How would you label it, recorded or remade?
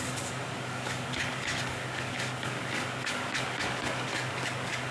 remade